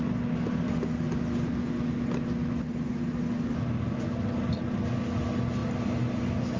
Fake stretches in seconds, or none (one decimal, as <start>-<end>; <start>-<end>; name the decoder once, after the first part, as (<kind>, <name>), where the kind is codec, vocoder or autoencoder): none